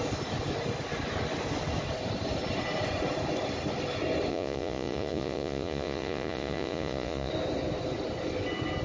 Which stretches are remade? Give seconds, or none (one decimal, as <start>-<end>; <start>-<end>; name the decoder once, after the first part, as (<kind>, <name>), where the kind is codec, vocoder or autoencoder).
4.3-7.3 (vocoder, Vocos)